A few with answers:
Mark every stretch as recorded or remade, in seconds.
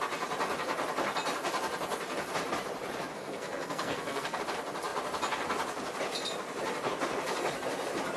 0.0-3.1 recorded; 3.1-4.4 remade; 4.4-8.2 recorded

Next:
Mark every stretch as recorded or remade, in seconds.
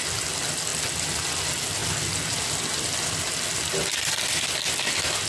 0.0-5.3 recorded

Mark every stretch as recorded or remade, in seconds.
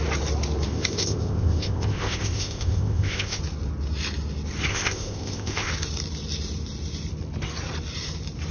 0.0-0.7 recorded; 0.7-3.4 remade; 3.4-4.7 recorded; 4.7-5.7 remade; 5.7-8.5 recorded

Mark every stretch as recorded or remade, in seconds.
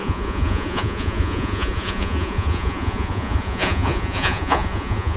0.0-5.2 remade